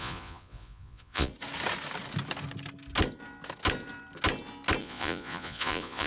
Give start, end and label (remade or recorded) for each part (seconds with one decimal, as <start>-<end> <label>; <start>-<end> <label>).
0.0-1.3 remade; 1.3-4.8 recorded; 4.8-6.1 remade